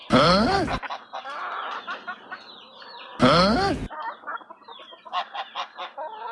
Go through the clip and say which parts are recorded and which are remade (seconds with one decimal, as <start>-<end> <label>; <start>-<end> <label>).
0.0-1.8 remade; 1.8-6.3 recorded